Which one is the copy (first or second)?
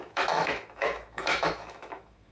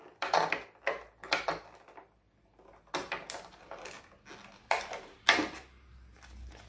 first